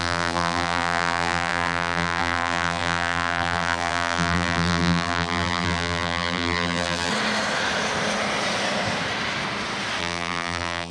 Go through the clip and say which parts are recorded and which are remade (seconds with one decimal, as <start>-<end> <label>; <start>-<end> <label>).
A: 0.0-7.1 remade; 7.1-10.0 recorded; 10.0-10.9 remade